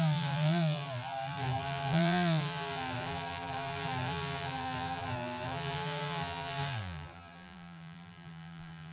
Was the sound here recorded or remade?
remade